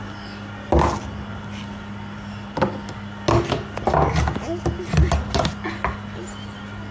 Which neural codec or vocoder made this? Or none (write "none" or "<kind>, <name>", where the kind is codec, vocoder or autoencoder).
none